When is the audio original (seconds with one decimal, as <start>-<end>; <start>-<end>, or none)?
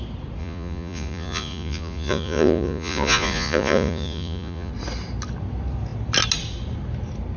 0.0-0.4; 4.7-7.4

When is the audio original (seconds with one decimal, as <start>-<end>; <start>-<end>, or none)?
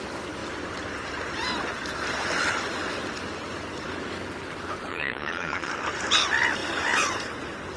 0.0-4.9; 5.7-7.8